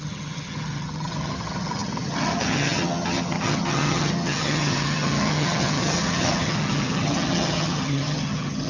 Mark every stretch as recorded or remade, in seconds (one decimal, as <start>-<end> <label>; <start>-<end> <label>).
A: 0.0-8.7 remade